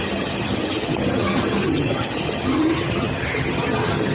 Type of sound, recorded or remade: remade